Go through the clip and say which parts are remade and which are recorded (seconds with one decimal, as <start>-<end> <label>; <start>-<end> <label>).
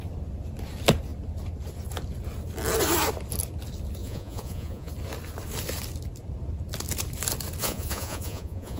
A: 0.0-4.0 recorded; 4.0-4.9 remade; 4.9-7.6 recorded; 7.6-8.8 remade